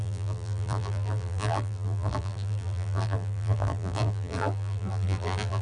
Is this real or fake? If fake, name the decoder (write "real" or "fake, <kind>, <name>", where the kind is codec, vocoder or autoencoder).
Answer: fake, vocoder, BigVGAN v2